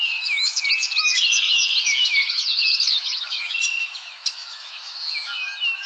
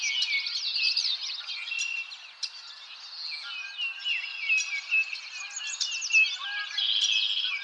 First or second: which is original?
second